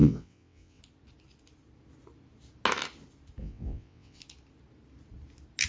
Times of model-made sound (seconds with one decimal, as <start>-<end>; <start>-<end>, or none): 0.0-0.8; 3.4-4.2